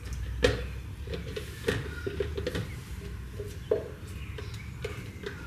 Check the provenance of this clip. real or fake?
real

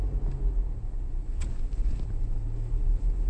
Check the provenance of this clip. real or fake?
real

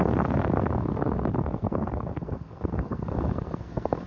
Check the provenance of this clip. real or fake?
fake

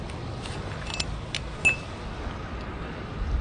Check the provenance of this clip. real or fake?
real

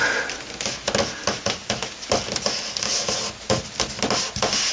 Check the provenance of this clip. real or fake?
real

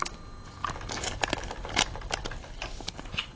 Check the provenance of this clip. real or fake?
real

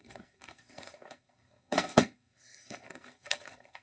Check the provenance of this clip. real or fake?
fake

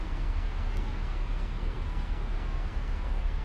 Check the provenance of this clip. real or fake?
fake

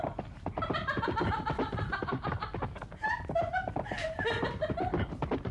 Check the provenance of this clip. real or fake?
real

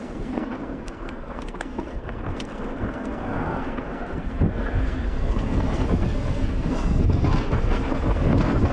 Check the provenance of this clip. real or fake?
fake